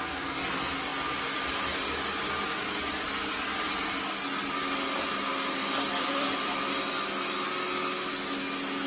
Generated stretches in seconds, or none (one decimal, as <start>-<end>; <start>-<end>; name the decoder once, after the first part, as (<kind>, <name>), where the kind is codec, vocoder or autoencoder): 5.6-6.9 (vocoder, BigVGAN v2)